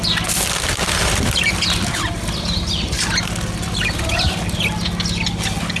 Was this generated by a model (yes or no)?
no